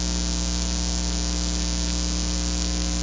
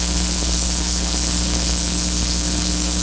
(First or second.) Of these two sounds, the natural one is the first